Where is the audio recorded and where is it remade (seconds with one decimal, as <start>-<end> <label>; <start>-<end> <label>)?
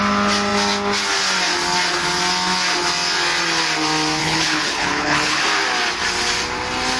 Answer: 0.0-4.2 recorded; 4.2-5.4 remade; 5.4-7.0 recorded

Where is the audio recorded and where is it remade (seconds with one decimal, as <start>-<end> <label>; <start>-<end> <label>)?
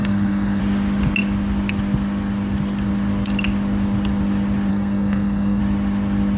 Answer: 0.0-0.6 remade; 0.6-4.7 recorded; 4.7-5.6 remade; 5.6-6.4 recorded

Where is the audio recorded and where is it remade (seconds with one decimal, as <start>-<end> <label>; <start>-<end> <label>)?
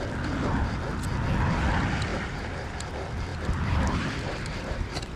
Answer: 0.0-2.1 recorded; 2.1-2.7 remade; 2.7-3.3 recorded; 3.3-5.2 remade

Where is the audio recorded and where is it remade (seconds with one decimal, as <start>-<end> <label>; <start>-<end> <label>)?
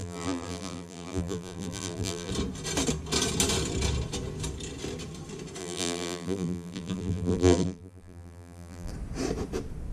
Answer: 0.0-2.3 remade; 2.3-5.6 recorded; 5.6-8.9 remade; 8.9-9.9 recorded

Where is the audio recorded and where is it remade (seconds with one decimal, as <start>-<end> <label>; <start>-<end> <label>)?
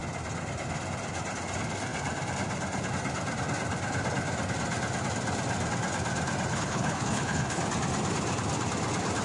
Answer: 0.0-6.5 recorded; 6.5-7.6 remade; 7.6-9.2 recorded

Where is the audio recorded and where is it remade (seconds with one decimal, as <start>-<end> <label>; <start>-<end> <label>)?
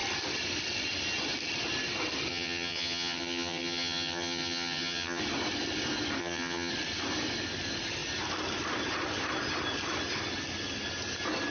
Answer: 0.0-2.3 recorded; 2.3-5.2 remade; 5.2-6.2 recorded; 6.2-6.7 remade; 6.7-11.5 recorded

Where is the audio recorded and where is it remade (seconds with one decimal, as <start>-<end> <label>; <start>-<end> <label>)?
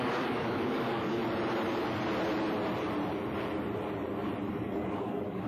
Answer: 0.0-1.2 remade; 1.2-4.5 recorded; 4.5-5.5 remade